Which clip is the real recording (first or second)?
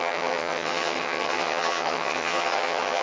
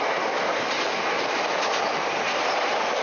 second